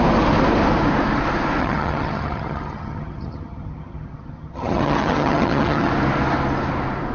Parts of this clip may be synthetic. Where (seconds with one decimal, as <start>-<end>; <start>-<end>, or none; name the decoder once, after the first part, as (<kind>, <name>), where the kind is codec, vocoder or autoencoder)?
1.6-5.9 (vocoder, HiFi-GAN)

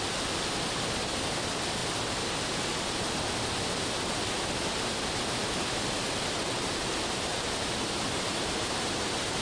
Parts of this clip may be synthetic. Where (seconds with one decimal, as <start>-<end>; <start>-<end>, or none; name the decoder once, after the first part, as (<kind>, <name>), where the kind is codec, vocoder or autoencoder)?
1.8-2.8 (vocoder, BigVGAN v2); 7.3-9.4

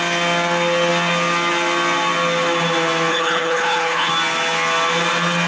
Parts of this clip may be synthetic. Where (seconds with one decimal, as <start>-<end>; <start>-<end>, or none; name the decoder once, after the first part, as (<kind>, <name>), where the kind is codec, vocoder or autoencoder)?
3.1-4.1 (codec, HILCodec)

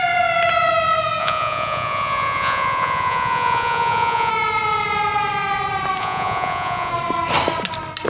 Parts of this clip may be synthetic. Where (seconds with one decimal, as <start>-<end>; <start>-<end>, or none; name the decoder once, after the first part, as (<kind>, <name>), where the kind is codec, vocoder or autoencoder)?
1.2-4.3 (vocoder, Vocos); 6.0-6.9